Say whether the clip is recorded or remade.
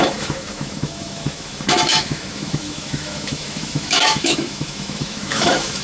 remade